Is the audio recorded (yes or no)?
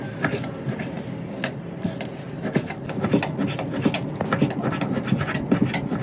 yes